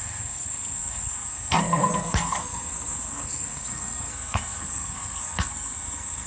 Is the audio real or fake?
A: fake